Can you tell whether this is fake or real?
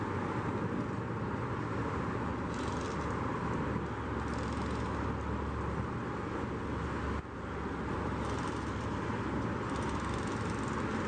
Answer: real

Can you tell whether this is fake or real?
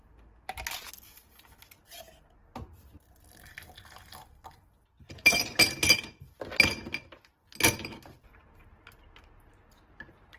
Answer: real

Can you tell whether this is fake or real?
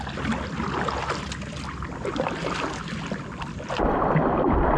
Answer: real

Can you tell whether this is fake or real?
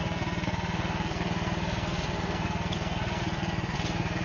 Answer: fake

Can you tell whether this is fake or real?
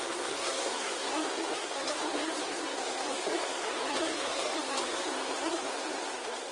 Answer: fake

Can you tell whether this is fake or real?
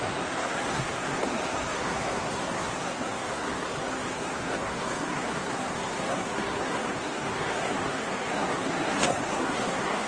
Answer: fake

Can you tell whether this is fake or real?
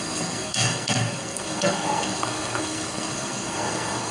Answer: fake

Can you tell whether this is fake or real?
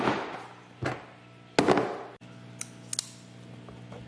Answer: real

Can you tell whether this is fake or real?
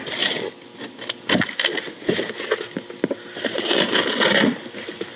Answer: real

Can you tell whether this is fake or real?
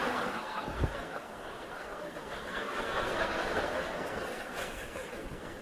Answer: fake